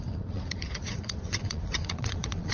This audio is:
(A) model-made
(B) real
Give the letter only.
A